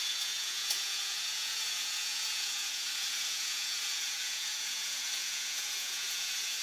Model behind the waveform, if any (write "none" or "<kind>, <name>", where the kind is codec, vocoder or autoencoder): vocoder, Vocos